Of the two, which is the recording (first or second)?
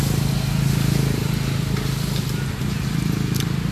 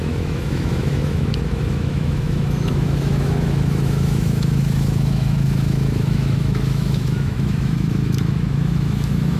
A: first